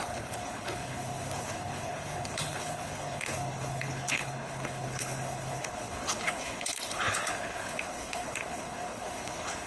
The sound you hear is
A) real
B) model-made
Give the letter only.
B